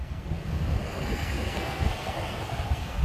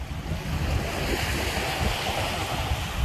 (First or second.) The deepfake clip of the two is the first